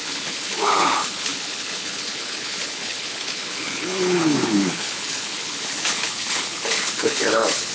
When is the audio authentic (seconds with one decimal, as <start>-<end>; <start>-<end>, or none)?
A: none